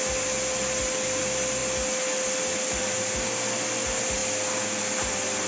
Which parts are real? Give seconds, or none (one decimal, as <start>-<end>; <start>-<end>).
0.0-5.5